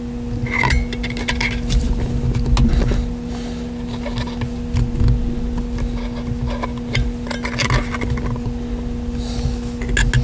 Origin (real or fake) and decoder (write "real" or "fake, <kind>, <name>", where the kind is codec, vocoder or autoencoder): real